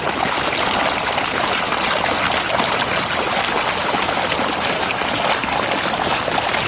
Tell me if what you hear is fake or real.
real